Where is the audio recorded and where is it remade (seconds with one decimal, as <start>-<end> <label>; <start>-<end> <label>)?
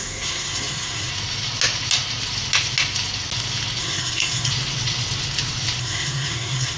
0.0-1.1 remade; 1.1-3.8 recorded; 3.8-4.5 remade; 4.5-5.8 recorded; 5.8-6.8 remade